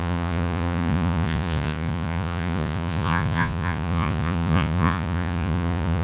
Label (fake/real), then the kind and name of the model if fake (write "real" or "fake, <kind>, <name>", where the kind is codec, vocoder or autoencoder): fake, vocoder, Vocos